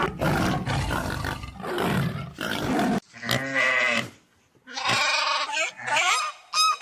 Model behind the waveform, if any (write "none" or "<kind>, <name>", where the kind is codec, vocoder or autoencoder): none